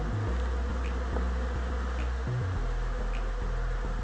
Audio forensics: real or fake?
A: real